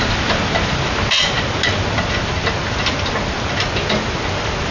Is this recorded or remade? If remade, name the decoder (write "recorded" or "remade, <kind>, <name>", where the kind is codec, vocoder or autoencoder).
recorded